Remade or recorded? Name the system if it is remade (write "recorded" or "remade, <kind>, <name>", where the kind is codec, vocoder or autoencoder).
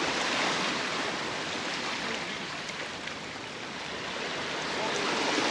recorded